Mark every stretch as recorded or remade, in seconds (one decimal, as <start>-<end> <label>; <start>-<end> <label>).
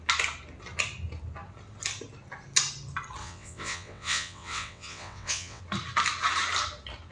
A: 0.0-3.2 recorded; 3.2-5.6 remade; 5.6-7.1 recorded